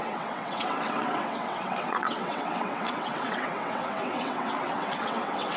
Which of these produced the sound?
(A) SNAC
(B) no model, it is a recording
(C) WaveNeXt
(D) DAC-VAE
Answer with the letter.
C